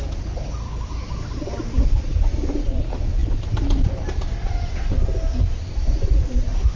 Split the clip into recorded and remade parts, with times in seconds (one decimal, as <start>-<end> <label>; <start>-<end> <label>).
0.0-6.8 recorded